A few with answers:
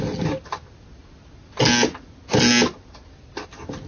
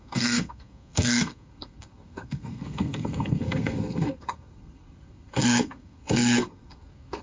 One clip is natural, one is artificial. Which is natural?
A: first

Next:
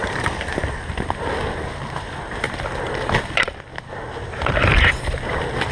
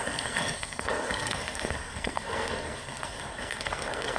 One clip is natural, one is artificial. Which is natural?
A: first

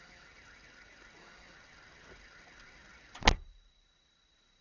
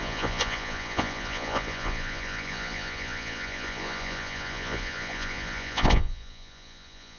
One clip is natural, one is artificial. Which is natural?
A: first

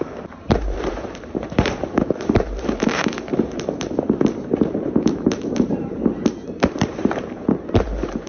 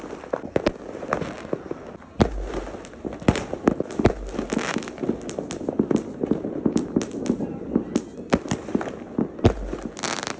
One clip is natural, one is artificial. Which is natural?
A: second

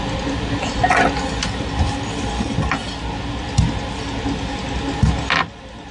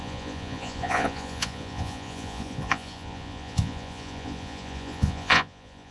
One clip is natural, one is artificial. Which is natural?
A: first